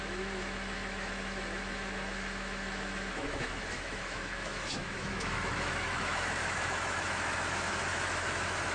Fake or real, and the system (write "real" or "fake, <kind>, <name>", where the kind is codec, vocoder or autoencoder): fake, autoencoder, DAC-VAE